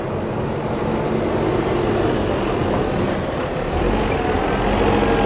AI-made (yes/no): no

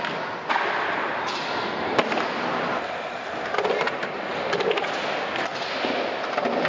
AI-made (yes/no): no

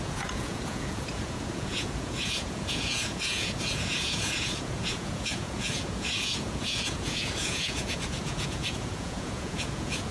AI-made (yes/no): yes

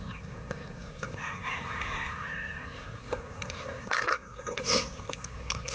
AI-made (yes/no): yes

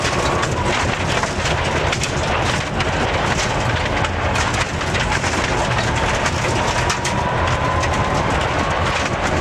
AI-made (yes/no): no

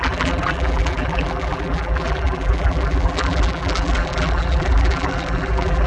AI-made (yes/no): yes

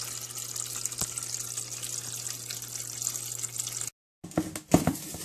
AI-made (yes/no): no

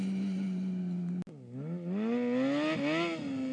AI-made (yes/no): no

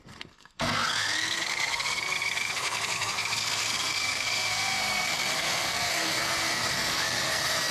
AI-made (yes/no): yes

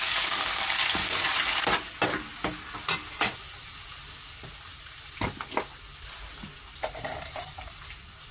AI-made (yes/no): no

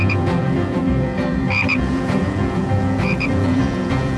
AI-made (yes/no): yes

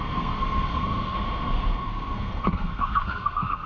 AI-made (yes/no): yes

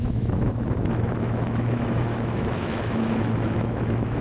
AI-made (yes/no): yes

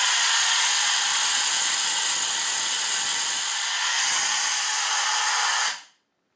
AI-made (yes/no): no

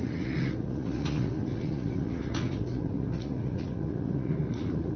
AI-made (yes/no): yes